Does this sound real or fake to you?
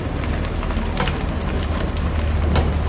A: fake